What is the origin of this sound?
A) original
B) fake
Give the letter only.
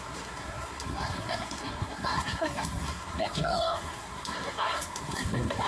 B